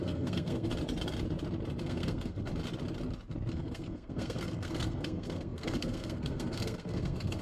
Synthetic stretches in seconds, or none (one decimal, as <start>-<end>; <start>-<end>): 0.0-0.7; 1.8-2.5; 3.5-7.4